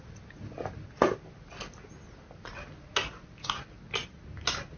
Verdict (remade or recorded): recorded